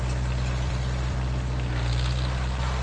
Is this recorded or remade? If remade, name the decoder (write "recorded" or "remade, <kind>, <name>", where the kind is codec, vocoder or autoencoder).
recorded